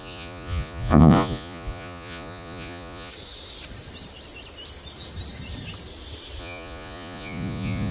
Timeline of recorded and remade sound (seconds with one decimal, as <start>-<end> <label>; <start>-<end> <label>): 0.0-3.1 remade; 3.1-6.4 recorded; 6.4-7.9 remade